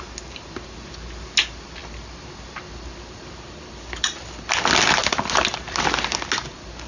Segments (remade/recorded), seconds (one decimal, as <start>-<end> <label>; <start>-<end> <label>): 0.0-6.9 recorded